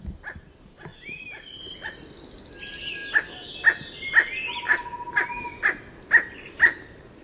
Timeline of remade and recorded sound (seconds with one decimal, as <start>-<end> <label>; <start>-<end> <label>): 0.0-0.9 recorded; 0.9-1.9 remade; 1.9-7.2 recorded